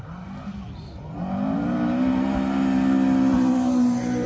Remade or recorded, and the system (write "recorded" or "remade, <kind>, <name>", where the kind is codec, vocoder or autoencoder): recorded